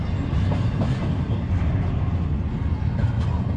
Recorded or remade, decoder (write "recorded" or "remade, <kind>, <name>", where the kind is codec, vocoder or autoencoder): recorded